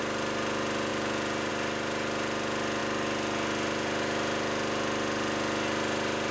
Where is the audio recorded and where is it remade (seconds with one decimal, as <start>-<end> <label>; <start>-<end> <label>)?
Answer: 0.0-6.3 recorded